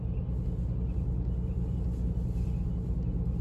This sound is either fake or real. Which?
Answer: real